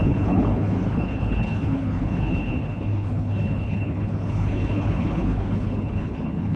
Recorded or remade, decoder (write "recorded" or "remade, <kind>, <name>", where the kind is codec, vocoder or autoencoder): remade, codec, HILCodec